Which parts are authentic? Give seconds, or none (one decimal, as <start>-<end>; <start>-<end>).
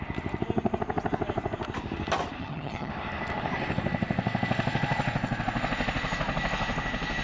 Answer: 0.0-2.4; 2.9-7.2